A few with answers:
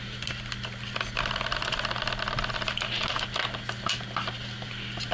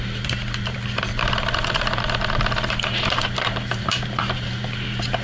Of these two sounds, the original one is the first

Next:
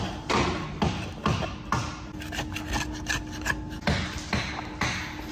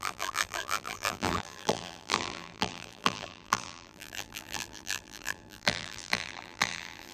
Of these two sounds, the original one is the first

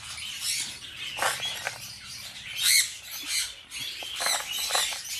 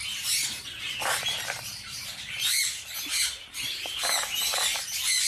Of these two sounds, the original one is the first